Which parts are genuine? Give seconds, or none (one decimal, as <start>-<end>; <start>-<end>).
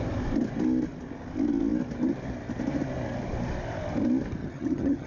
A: 0.0-4.4